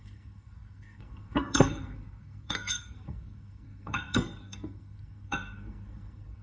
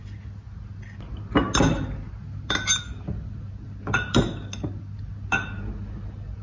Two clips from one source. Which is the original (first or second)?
second